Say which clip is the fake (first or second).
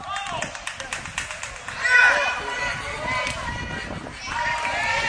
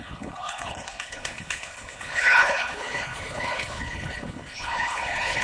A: second